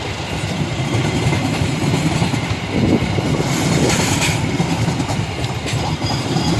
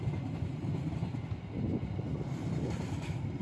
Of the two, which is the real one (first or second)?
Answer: second